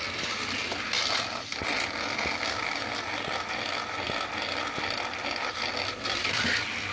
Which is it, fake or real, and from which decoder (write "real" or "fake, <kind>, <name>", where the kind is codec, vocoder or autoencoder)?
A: real